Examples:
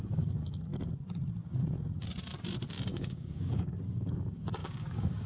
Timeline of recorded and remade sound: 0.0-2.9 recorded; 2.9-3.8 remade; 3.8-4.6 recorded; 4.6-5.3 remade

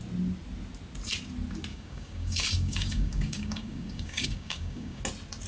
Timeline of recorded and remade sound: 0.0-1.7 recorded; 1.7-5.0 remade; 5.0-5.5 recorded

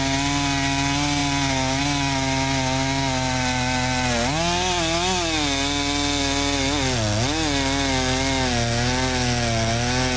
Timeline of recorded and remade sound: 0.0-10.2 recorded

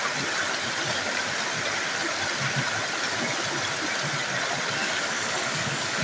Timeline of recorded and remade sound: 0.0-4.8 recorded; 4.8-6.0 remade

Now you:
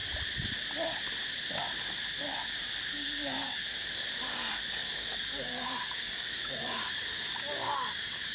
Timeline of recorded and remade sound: 0.0-2.9 recorded; 2.9-3.6 remade; 3.6-4.7 recorded; 4.7-8.3 remade

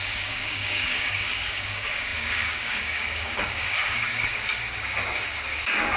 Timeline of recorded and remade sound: 0.0-6.0 remade